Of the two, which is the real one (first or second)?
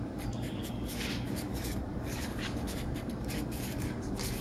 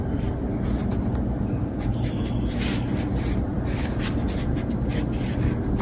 second